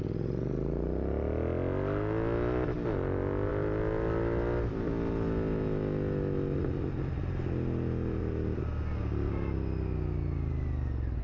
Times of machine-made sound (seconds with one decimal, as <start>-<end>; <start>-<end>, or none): none